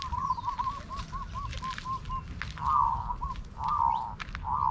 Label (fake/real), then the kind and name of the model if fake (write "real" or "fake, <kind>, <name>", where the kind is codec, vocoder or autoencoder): real